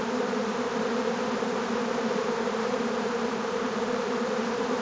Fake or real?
fake